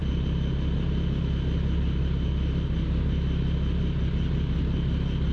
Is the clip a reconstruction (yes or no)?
no